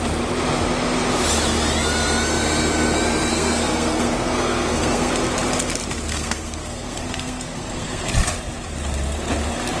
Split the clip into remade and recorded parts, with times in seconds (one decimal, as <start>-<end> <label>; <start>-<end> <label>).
0.0-3.3 recorded; 3.3-5.1 remade; 5.1-6.1 recorded; 6.1-8.1 remade; 8.1-9.8 recorded